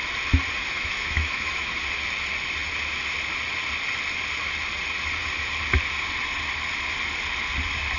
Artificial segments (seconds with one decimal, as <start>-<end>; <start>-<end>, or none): 0.7-1.8